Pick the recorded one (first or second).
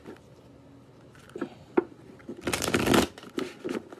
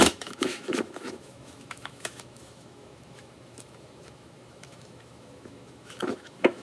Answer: first